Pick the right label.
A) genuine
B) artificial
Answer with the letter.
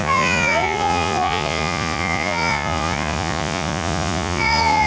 B